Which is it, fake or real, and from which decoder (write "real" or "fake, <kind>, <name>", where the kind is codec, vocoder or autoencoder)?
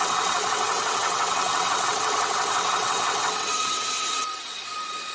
fake, vocoder, WaveNeXt